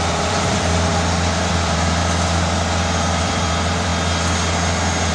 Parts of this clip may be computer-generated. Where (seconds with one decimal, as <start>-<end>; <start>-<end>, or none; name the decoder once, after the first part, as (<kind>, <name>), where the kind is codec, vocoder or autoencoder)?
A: 0.0-0.9 (vocoder, BigVGAN v2); 1.5-2.0; 3.2-3.9